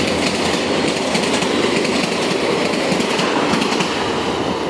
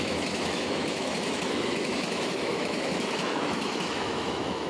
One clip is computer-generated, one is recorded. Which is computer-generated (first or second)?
second